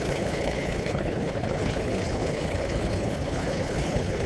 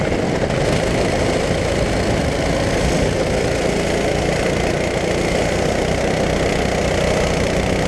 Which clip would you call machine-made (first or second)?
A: first